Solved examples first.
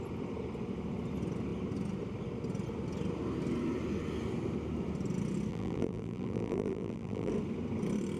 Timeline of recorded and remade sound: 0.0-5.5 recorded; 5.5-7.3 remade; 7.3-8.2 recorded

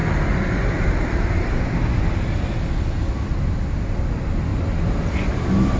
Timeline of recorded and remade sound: 0.0-4.5 recorded; 4.5-5.8 remade

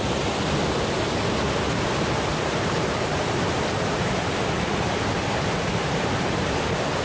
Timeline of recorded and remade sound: 0.0-2.3 recorded; 2.3-4.4 remade; 4.4-5.8 recorded; 5.8-6.5 remade; 6.5-7.0 recorded

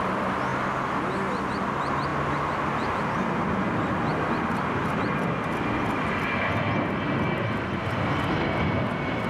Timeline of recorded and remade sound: 0.0-9.3 recorded

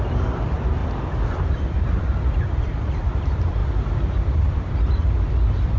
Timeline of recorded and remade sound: 0.0-5.8 remade

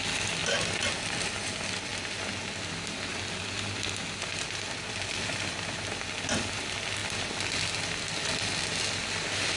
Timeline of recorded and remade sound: 0.0-9.6 recorded

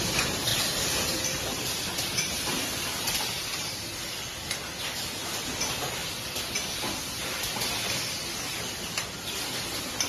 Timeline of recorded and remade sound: 0.0-0.5 recorded; 0.5-3.9 remade; 3.9-10.1 recorded

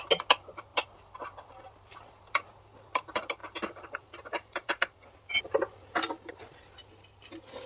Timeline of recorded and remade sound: 0.0-0.7 recorded; 0.7-2.3 remade; 2.3-3.4 recorded; 3.4-6.3 remade; 6.3-7.7 recorded